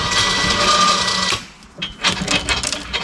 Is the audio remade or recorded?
recorded